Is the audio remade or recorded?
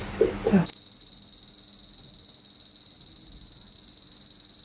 recorded